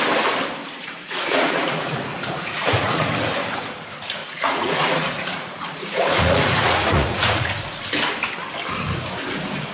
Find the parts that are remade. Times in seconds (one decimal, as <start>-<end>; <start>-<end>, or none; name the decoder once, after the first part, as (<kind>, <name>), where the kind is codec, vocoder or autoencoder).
0.6-3.1 (vocoder, Vocos); 4.2-7.5